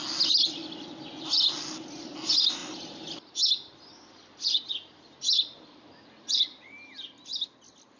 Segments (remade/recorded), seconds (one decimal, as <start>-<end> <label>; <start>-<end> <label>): 0.0-8.0 recorded